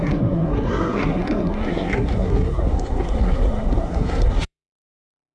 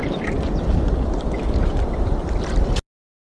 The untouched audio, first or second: second